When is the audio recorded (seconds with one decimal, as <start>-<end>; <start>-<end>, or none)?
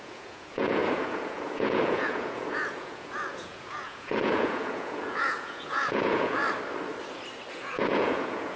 6.4-7.5